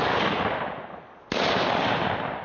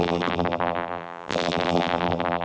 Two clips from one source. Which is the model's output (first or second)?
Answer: second